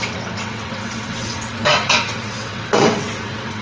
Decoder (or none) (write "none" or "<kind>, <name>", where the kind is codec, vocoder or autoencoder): vocoder, WaveNeXt